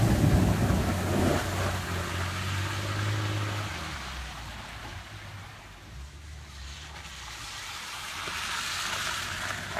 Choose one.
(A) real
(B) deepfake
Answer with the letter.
A